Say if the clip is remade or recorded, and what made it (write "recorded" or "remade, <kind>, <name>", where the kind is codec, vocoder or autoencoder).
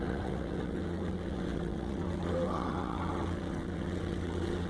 remade, vocoder, WaveNeXt